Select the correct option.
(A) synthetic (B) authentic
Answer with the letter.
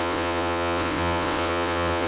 A